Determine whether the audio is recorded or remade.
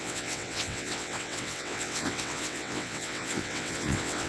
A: remade